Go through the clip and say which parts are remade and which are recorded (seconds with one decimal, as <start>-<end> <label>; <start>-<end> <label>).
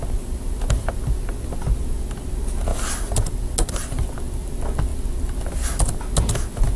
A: 0.0-6.8 recorded